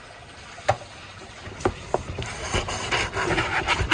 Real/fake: real